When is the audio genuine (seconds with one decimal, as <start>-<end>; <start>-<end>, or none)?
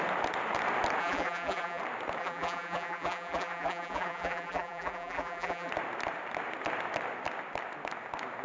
0.0-1.0; 1.8-2.2; 5.7-8.4